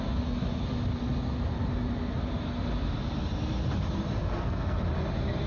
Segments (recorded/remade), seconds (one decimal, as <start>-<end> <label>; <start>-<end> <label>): 0.0-4.2 recorded; 4.2-4.8 remade; 4.8-5.5 recorded